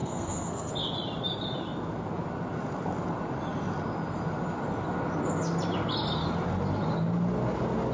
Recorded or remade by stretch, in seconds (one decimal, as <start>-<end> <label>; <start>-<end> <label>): 0.0-0.7 remade; 0.7-7.9 recorded